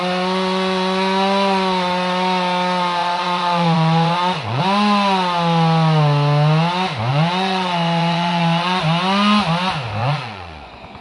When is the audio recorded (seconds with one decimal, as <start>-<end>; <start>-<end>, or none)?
0.0-3.0; 4.6-7.1; 8.8-10.0